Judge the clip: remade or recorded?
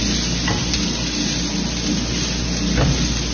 recorded